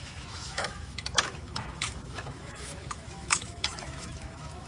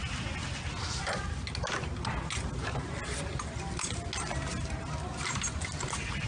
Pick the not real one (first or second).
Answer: first